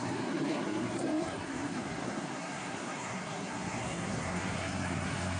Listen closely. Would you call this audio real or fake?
fake